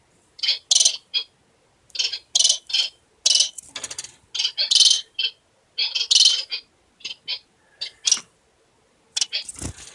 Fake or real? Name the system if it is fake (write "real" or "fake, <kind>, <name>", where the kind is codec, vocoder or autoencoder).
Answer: real